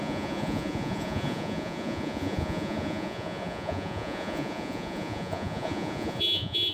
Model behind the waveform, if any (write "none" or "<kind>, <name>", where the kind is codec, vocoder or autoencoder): vocoder, Vocos